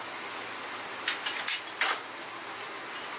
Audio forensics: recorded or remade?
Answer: recorded